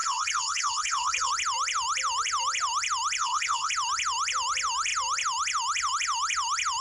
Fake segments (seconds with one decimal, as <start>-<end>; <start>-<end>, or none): 0.0-1.3; 3.2-3.7